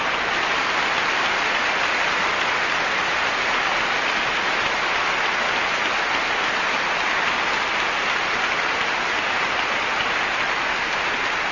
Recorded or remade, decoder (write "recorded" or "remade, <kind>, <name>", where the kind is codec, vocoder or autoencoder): recorded